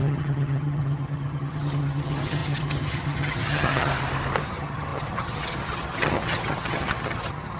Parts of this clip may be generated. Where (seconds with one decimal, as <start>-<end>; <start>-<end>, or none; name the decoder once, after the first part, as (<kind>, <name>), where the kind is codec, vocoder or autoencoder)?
0.0-3.9 (vocoder, HiFi-GAN); 4.4-7.6